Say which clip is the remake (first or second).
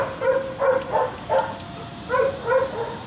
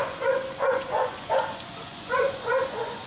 second